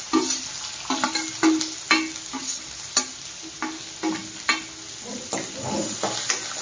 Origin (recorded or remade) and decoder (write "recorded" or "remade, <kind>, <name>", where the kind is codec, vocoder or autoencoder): recorded